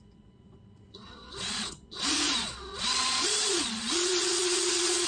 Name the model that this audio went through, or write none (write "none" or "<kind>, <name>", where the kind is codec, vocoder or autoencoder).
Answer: vocoder, Vocos